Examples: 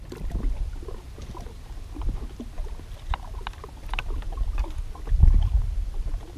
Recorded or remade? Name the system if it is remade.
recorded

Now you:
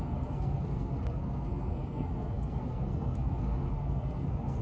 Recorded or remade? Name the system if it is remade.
remade, codec, SNAC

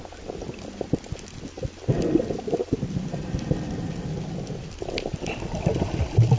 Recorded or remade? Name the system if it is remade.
recorded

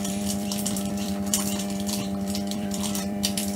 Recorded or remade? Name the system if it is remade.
remade, vocoder, BigVGAN v2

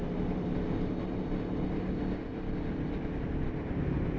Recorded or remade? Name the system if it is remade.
recorded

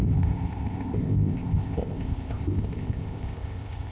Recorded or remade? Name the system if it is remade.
remade, codec, ZipCodec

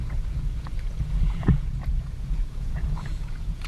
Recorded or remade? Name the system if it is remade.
remade, vocoder, Vocos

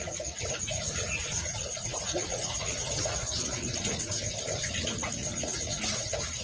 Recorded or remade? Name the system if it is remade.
remade, vocoder, Vocos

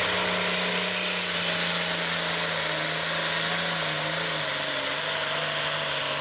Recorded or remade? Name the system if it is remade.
recorded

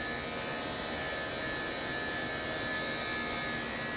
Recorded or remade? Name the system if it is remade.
recorded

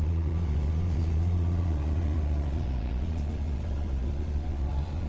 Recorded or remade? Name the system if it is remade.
remade, vocoder, Vocos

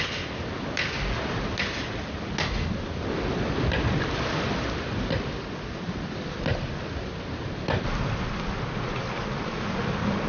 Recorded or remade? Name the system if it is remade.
recorded